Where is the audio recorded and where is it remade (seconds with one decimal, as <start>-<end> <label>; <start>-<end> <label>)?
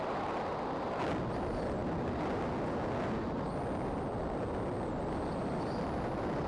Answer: 0.0-6.5 recorded